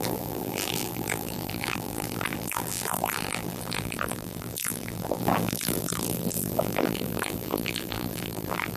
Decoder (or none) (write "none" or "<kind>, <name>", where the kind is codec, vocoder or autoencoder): vocoder, BigVGAN v2